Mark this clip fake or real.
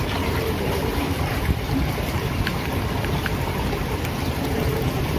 fake